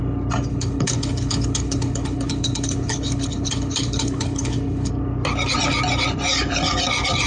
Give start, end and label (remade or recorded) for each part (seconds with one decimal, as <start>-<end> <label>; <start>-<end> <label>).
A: 0.0-0.5 recorded; 0.5-4.9 remade; 4.9-7.3 recorded